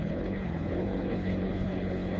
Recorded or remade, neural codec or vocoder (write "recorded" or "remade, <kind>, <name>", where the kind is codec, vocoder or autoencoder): remade, codec, HILCodec